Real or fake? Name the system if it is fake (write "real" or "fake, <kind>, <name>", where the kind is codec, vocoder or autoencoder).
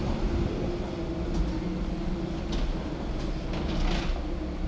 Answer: real